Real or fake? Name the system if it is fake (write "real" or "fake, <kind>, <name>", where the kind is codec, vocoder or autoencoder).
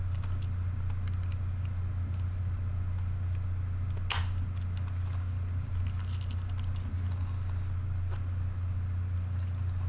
real